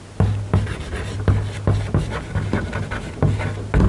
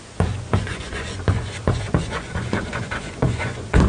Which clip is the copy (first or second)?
second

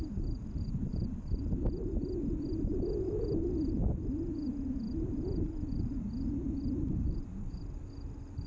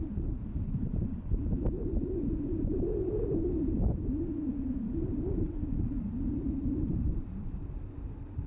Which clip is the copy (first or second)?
second